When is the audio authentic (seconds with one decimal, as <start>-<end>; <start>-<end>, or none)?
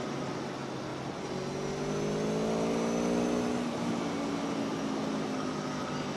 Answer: 0.0-6.2